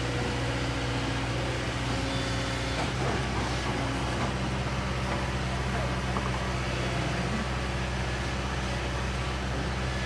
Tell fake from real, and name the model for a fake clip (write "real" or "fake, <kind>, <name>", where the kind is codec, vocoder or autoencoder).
real